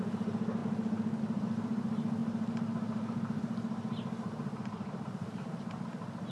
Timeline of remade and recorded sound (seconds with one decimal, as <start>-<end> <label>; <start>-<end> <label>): 0.0-0.6 remade; 0.6-1.2 recorded; 1.2-6.3 remade